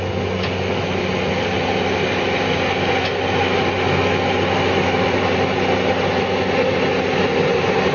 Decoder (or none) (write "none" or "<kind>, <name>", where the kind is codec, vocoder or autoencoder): none